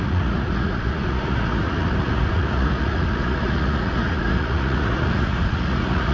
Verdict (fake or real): fake